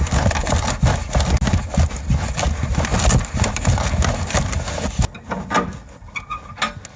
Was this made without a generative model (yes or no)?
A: yes